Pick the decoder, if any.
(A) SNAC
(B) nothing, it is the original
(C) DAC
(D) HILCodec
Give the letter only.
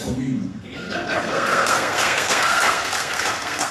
A